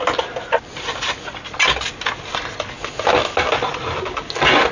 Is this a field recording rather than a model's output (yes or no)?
yes